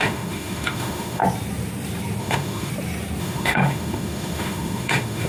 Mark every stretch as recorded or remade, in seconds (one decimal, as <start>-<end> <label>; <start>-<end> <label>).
0.0-1.2 remade; 1.2-2.2 recorded; 2.2-2.7 remade; 2.7-3.2 recorded; 3.2-5.3 remade